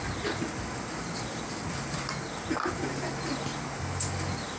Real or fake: real